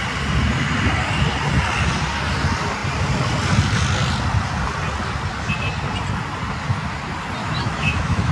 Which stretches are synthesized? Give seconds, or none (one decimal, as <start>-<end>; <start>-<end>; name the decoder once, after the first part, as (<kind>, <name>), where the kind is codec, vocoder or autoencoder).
7.4-8.3 (autoencoder, DAC-VAE)

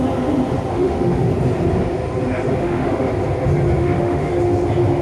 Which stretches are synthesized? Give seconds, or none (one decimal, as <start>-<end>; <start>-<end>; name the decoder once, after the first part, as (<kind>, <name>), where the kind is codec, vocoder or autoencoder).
0.7-1.3 (autoencoder, DAC-VAE); 2.6-3.1; 3.8-4.3

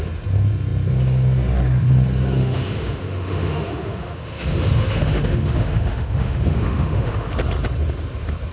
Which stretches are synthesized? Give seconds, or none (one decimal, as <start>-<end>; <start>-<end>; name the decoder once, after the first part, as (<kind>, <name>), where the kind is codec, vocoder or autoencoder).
2.4-7.3 (autoencoder, DAC-VAE)

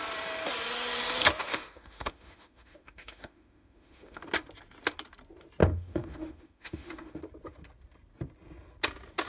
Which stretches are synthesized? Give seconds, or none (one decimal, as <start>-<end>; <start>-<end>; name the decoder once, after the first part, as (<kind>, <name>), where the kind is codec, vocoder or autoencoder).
1.4-4.2 (autoencoder, DAC-VAE); 5.6-7.2

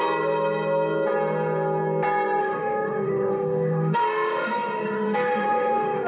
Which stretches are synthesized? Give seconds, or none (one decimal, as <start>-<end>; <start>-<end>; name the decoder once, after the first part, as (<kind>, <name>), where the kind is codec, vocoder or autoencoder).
2.4-6.1 (autoencoder, DAC-VAE)

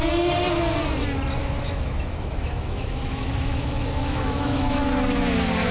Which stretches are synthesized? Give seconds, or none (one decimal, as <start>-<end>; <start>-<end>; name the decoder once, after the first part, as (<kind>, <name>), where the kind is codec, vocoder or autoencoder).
1.4-4.8 (autoencoder, DAC-VAE)

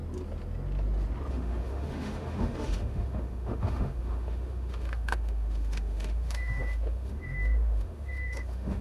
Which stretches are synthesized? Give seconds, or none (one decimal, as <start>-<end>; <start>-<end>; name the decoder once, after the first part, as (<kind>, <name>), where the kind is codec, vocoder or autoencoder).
1.3-8.8 (autoencoder, DAC-VAE)

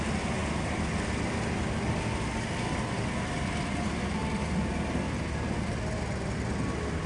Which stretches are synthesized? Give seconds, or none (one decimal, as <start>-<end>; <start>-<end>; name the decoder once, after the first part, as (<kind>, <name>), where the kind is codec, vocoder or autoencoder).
none